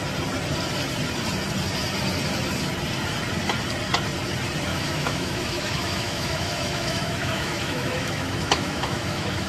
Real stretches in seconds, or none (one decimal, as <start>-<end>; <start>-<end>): 0.0-4.7